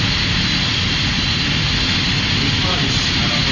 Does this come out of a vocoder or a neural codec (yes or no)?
no